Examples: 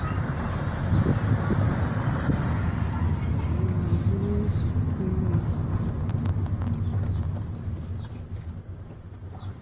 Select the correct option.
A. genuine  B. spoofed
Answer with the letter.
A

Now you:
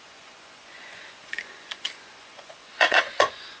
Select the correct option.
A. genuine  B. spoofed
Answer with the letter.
B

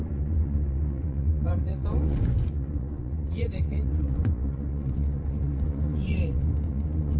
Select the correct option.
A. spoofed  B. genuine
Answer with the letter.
A